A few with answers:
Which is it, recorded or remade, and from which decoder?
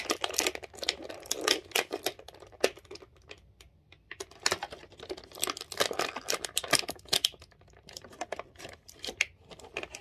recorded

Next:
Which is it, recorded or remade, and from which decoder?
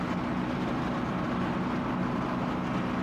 recorded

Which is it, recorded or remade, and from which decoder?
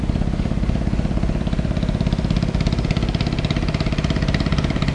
recorded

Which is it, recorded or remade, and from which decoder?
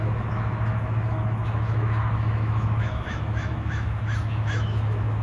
remade, autoencoder, DAC-VAE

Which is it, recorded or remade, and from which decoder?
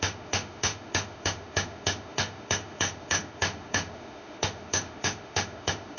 remade, autoencoder, DAC-VAE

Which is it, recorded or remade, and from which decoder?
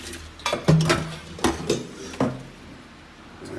recorded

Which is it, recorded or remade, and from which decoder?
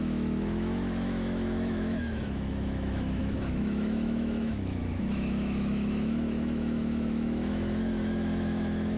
remade, autoencoder, DAC-VAE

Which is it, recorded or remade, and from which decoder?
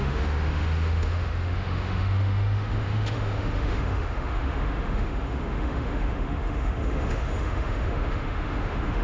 remade, autoencoder, DAC-VAE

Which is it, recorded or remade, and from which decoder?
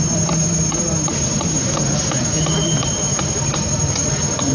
recorded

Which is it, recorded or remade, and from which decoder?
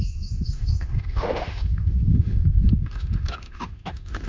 remade, autoencoder, DAC-VAE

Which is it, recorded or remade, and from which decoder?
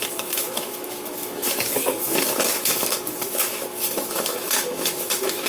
remade, autoencoder, DAC-VAE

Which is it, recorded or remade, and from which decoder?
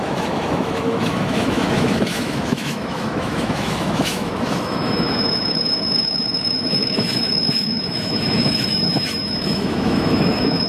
remade, autoencoder, DAC-VAE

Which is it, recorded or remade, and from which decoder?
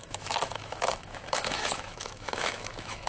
remade, autoencoder, DAC-VAE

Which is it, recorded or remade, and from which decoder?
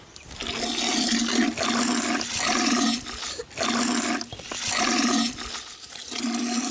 recorded